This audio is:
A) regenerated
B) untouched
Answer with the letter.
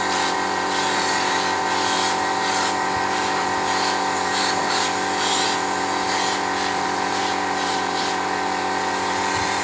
A